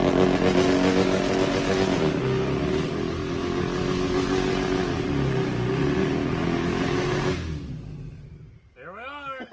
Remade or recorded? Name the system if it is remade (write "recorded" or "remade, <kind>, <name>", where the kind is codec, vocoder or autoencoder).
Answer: recorded